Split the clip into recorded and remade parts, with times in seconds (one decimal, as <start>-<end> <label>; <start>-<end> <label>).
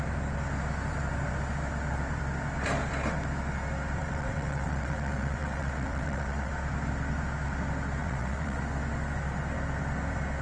0.0-4.0 recorded; 4.0-6.5 remade; 6.5-8.0 recorded; 8.0-8.6 remade; 8.6-10.4 recorded